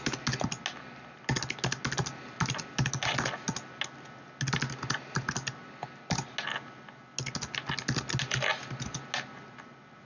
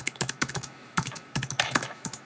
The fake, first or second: second